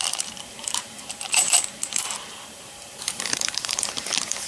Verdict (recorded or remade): remade